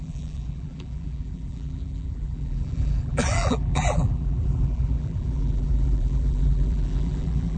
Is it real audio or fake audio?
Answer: fake